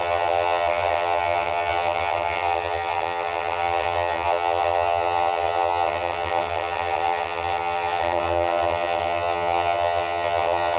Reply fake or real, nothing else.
fake